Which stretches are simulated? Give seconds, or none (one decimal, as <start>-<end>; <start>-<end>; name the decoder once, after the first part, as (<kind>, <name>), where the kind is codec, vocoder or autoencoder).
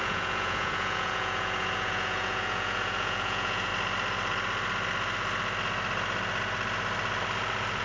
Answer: 0.0-3.7 (vocoder, Vocos)